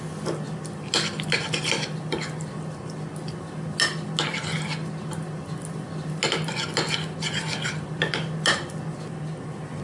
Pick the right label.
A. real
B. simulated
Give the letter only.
A